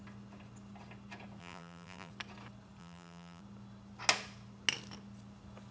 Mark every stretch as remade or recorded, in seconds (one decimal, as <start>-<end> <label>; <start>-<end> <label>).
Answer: 0.0-1.4 recorded; 1.4-2.1 remade; 2.1-2.8 recorded; 2.8-3.4 remade; 3.4-5.7 recorded